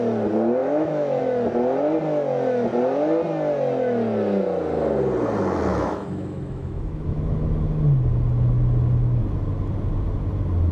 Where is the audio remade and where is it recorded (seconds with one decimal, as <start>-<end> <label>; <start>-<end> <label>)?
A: 0.0-0.6 recorded; 0.6-1.2 remade; 1.2-5.7 recorded; 5.7-7.2 remade; 7.2-10.7 recorded